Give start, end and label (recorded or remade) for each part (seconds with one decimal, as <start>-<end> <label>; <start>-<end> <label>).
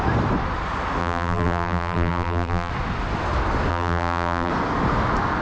0.0-1.0 recorded; 1.0-2.7 remade; 2.7-3.7 recorded; 3.7-4.5 remade; 4.5-5.4 recorded